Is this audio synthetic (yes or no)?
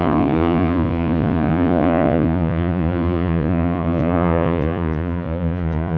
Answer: yes